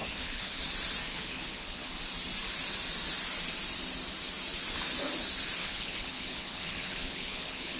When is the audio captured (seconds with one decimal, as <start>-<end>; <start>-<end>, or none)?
0.6-1.1; 1.9-5.6